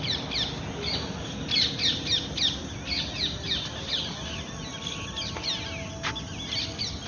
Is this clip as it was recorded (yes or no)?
yes